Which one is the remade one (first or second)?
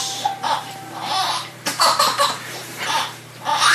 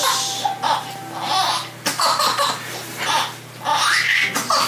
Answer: first